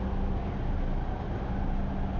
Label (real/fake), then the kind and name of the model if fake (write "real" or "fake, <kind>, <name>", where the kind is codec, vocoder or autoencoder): real